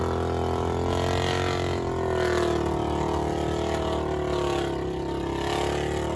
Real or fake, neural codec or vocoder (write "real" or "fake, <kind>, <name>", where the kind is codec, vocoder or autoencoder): real